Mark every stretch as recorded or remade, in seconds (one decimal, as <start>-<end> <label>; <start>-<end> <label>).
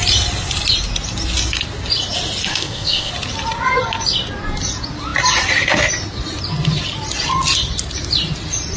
0.0-2.5 recorded; 2.5-3.1 remade; 3.1-8.8 recorded